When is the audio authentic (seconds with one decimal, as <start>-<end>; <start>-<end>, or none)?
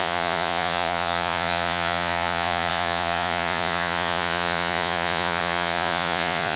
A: none